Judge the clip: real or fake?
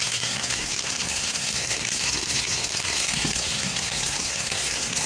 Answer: fake